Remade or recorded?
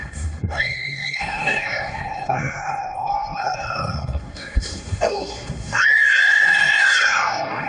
remade